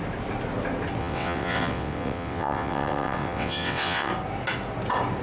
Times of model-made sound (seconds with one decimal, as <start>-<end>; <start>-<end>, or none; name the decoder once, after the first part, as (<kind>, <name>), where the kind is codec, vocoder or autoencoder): 1.0-4.1 (vocoder, WaveNeXt)